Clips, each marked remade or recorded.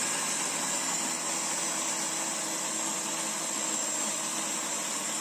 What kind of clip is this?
recorded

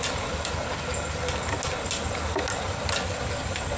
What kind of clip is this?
recorded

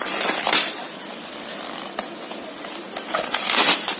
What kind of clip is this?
recorded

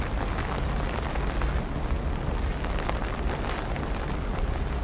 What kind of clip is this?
recorded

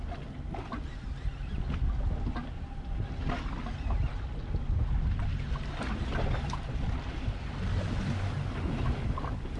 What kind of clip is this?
recorded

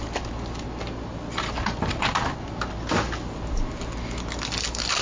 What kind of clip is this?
recorded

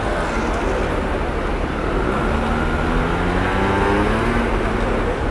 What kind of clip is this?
recorded